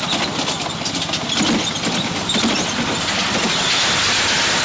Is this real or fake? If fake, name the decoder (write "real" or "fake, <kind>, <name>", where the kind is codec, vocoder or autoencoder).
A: real